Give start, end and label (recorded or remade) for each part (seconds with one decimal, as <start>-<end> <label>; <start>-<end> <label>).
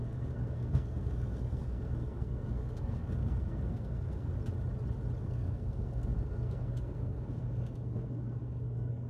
0.0-4.3 remade; 4.3-5.2 recorded; 5.2-9.1 remade